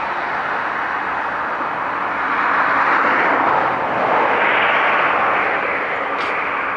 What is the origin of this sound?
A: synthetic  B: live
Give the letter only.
B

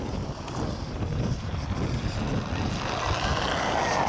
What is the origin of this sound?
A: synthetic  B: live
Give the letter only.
B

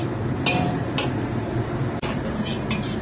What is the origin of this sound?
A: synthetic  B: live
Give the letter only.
A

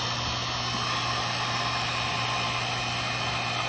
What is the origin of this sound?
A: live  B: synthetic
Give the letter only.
A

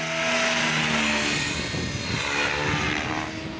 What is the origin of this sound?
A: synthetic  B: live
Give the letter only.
B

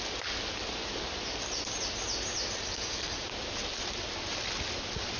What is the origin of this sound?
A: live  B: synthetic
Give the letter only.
A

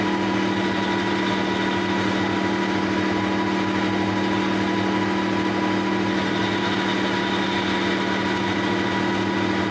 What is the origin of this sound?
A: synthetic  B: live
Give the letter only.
B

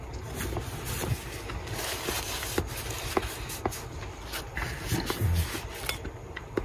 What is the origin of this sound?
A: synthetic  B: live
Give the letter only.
B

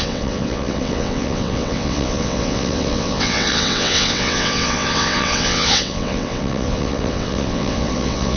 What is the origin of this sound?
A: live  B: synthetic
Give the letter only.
B